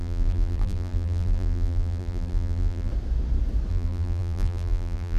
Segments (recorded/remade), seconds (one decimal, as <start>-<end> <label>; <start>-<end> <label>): 0.0-2.9 remade; 2.9-3.7 recorded; 3.7-5.2 remade